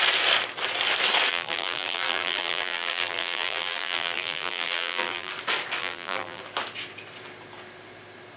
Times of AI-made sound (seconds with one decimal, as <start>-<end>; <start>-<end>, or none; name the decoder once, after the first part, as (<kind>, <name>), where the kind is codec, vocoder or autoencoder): 1.3-5.3 (vocoder, BigVGAN v2); 5.8-6.4